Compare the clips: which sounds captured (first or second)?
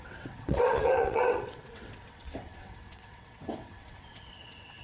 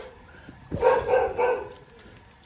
second